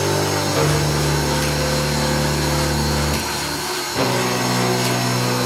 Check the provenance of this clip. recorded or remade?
recorded